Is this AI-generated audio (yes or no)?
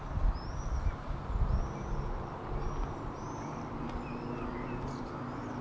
no